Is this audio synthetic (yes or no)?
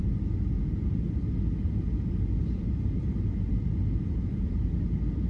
no